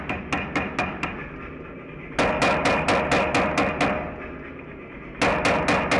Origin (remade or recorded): recorded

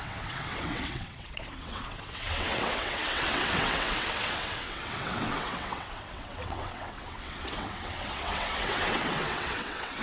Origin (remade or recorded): remade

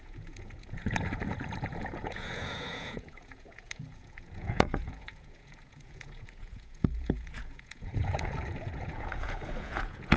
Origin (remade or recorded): remade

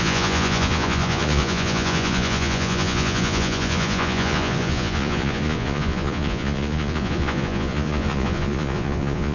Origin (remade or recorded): remade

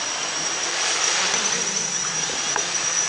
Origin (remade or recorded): recorded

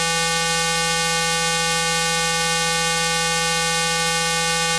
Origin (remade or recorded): recorded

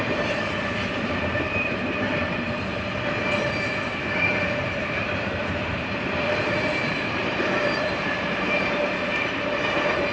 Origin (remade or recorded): remade